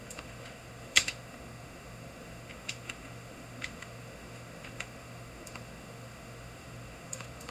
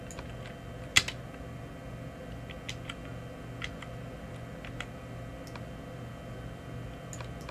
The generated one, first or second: first